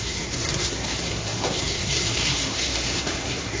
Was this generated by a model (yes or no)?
yes